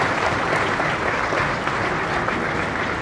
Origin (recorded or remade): recorded